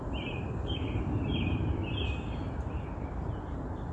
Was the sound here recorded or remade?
remade